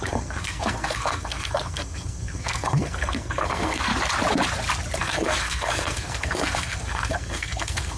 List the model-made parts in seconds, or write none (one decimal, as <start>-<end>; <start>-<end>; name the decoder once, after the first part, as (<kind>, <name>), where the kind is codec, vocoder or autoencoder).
0.0-3.9 (codec, SNAC); 5.0-8.0